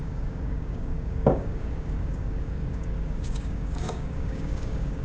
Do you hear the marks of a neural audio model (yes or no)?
yes